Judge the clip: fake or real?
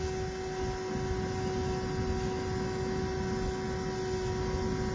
real